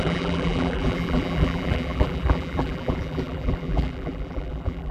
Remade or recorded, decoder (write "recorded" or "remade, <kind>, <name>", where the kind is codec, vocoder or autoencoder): remade, vocoder, BigVGAN v2